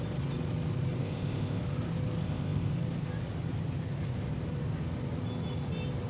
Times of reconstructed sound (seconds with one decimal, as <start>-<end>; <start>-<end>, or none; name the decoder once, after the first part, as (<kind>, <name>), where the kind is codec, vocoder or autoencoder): 1.0-1.6 (codec, ZipCodec); 2.2-2.7